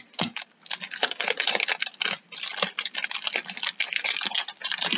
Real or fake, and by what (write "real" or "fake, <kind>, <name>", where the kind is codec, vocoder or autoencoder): real